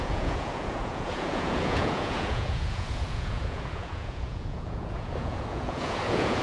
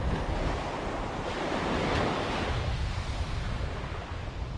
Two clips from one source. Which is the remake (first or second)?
first